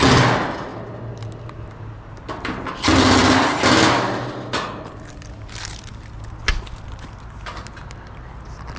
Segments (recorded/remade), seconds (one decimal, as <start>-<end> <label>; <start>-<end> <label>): 0.0-8.8 recorded